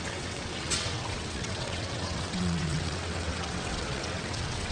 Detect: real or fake fake